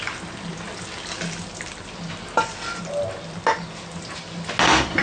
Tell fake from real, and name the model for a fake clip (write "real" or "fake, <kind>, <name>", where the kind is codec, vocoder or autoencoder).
real